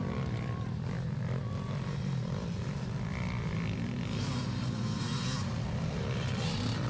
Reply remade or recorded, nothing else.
remade